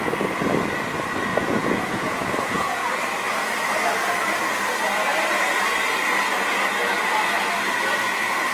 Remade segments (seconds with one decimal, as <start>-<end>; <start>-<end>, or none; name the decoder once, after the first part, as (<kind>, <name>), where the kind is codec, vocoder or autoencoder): 1.3-3.0 (vocoder, Vocos)